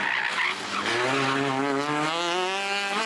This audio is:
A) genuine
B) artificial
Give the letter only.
A